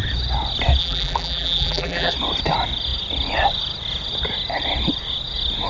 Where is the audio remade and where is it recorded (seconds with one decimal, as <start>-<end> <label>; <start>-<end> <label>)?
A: 0.0-0.8 recorded; 0.8-2.1 remade; 2.1-5.7 recorded